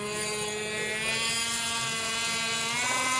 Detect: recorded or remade recorded